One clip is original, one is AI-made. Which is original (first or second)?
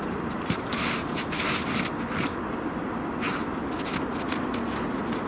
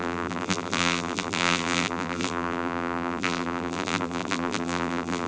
first